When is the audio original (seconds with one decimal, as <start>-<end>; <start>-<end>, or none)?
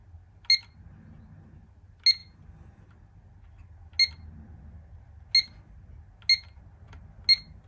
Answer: 0.0-7.7